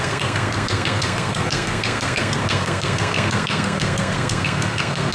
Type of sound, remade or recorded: remade